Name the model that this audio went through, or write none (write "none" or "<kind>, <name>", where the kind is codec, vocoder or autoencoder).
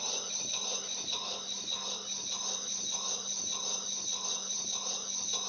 none